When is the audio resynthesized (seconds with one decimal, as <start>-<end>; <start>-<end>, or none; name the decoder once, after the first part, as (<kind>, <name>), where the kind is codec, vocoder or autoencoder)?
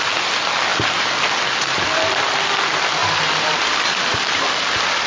none